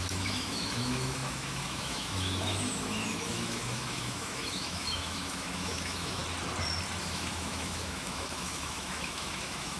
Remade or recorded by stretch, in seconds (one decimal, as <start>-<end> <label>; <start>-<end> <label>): 0.0-6.2 remade; 6.2-7.0 recorded; 7.0-9.8 remade